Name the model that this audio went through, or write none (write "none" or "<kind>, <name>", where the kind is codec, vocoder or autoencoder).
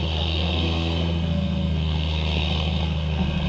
codec, SNAC